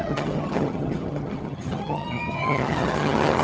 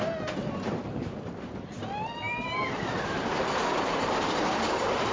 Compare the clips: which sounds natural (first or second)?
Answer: second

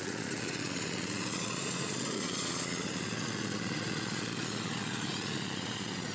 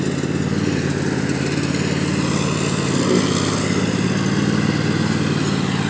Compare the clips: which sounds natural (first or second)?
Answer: second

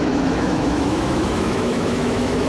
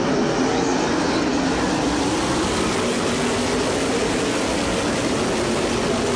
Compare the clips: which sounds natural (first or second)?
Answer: second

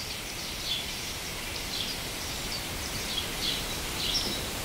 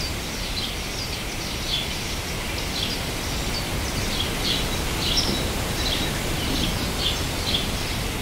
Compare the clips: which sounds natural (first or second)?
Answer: second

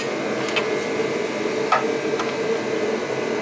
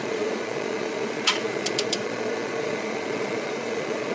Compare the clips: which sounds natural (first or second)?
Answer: first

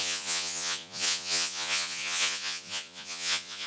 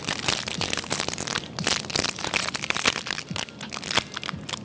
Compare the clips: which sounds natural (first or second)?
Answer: second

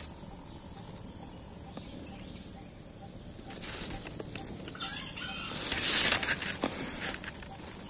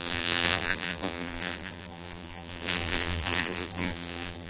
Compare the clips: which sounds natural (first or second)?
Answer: first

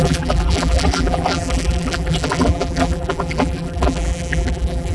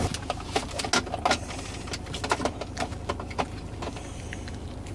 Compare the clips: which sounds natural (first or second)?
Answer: second